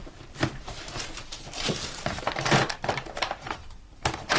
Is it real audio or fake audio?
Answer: fake